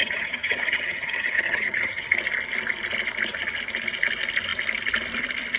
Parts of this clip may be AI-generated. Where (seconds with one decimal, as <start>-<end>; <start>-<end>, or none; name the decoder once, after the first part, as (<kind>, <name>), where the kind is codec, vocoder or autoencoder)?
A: 0.0-2.0 (vocoder, HiFi-GAN)